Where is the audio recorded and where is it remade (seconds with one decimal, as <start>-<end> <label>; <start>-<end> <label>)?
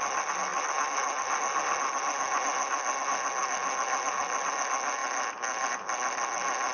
0.0-6.7 recorded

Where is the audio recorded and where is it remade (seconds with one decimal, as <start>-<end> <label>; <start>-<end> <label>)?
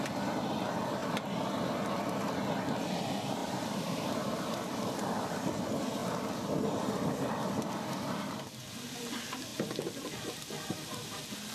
0.0-1.0 remade; 1.0-1.9 recorded; 1.9-11.5 remade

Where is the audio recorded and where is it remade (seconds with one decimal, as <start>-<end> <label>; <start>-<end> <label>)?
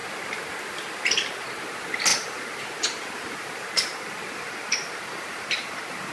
0.0-2.1 recorded; 2.1-6.1 remade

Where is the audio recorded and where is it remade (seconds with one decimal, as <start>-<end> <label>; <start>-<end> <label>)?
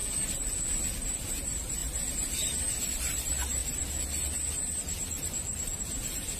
0.0-1.3 recorded; 1.3-1.8 remade; 1.8-2.6 recorded; 2.6-3.6 remade; 3.6-5.8 recorded; 5.8-6.4 remade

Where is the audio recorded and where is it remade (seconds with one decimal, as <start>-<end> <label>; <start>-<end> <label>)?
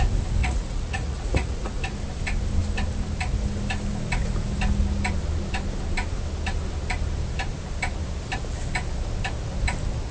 0.0-0.4 recorded; 0.4-1.8 remade; 1.8-10.1 recorded